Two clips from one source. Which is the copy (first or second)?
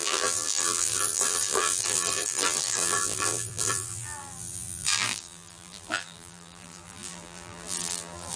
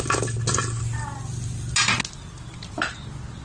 first